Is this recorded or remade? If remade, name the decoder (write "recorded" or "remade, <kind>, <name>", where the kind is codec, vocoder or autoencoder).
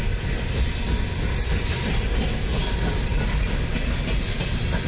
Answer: recorded